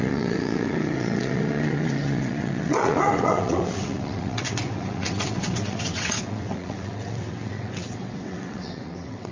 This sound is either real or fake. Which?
fake